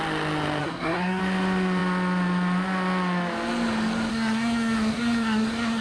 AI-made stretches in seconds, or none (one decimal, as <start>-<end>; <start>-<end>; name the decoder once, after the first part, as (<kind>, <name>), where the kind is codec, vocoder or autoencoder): 0.6-1.2 (codec, SNAC); 4.1-5.8